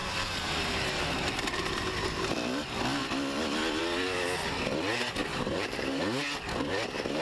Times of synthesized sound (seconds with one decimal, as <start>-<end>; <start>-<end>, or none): 0.0-2.3; 5.2-6.0